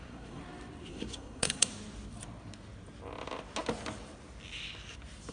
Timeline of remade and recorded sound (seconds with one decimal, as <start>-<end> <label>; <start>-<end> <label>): 0.0-0.4 remade; 0.4-0.9 recorded; 0.9-1.7 remade; 1.7-5.3 recorded